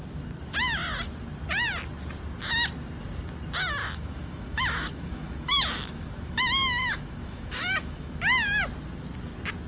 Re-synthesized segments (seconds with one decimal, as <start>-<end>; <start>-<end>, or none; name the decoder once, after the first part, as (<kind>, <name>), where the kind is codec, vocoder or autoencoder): 3.8-8.2 (autoencoder, DAC-VAE)